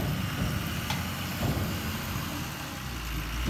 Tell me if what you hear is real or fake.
real